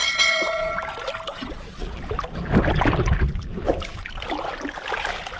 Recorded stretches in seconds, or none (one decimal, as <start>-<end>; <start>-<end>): 0.8-1.3; 2.0-5.4